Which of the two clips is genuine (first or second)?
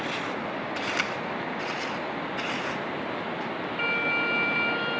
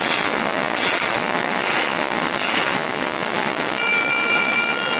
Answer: first